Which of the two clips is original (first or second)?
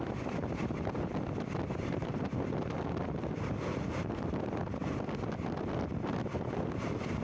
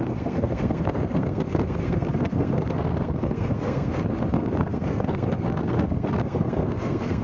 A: first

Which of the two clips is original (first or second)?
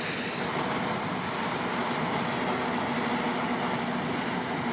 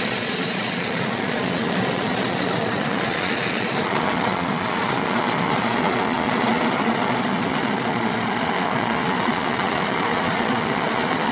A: first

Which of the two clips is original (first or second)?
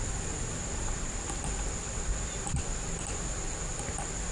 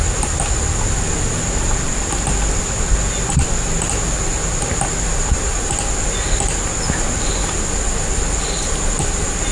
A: second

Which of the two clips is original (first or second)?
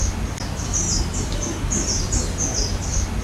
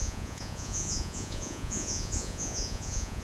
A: first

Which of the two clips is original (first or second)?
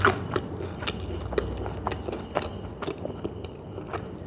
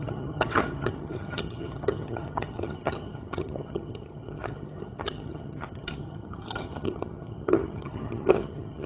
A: first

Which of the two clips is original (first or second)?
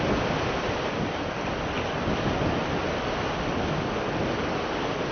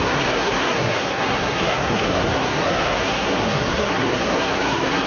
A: first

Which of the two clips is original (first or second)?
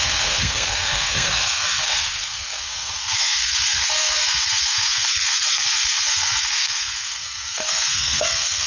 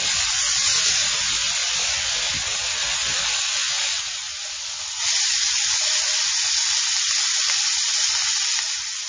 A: second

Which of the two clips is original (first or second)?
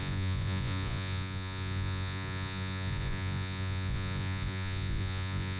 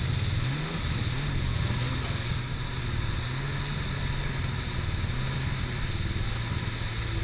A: second